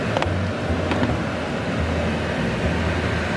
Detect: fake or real real